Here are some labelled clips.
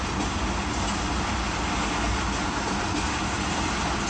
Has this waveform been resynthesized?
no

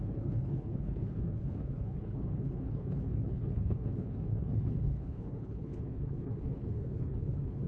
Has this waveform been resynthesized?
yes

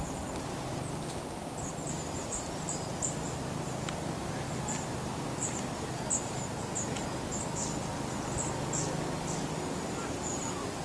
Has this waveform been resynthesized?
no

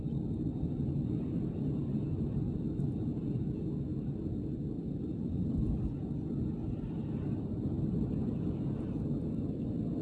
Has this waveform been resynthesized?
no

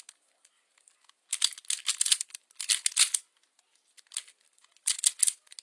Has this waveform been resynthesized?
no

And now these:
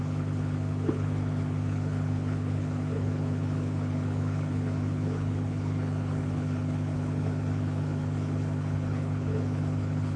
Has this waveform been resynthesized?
yes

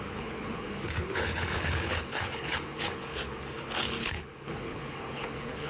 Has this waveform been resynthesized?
yes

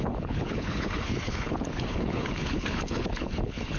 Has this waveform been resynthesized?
yes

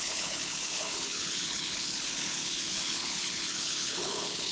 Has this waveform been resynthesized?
yes